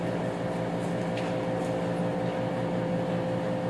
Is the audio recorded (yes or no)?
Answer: yes